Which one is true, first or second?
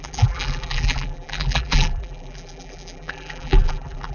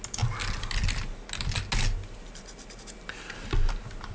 second